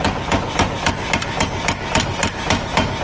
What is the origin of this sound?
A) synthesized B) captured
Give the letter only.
B